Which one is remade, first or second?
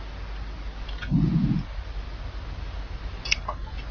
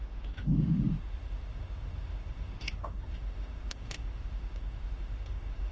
second